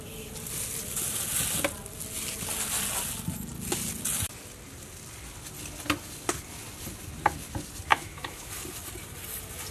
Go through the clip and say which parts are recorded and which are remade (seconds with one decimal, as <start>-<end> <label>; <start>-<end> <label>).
0.0-7.9 recorded; 7.9-8.5 remade; 8.5-9.7 recorded